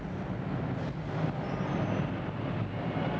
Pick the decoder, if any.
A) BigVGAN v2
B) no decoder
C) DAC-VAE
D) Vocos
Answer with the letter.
B